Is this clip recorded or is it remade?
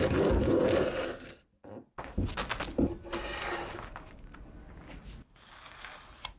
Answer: recorded